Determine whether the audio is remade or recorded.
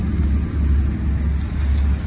recorded